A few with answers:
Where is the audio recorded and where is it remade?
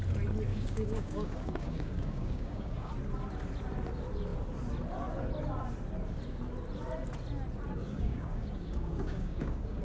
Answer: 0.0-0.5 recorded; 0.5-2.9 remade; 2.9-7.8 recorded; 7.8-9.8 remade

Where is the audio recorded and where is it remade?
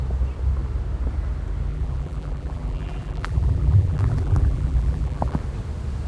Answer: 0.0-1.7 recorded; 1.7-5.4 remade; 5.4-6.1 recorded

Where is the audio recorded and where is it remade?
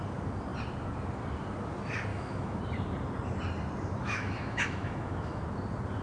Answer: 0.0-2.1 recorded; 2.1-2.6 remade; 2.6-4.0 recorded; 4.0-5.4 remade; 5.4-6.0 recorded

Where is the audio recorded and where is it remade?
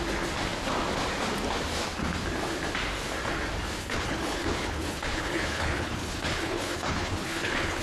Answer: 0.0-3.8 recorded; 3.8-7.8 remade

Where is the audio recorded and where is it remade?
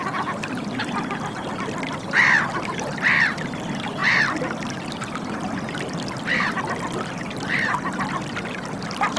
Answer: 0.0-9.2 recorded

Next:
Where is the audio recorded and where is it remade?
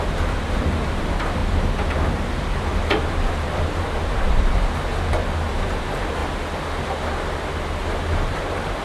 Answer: 0.0-1.4 remade; 1.4-2.6 recorded; 2.6-4.9 remade; 4.9-5.5 recorded; 5.5-6.2 remade; 6.2-8.1 recorded; 8.1-8.8 remade